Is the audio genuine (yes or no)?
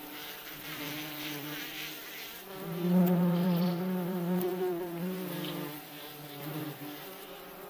no